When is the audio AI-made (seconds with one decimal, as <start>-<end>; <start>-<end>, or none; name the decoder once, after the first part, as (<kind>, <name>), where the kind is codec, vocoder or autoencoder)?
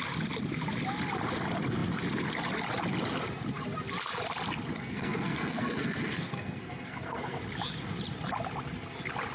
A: 4.7-7.4 (codec, SNAC)